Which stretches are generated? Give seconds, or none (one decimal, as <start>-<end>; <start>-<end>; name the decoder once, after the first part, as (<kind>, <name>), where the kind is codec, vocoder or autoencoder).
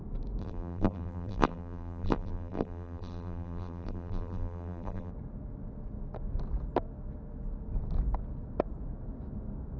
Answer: 0.4-5.1 (vocoder, BigVGAN v2)